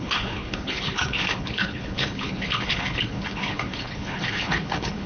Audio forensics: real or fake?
fake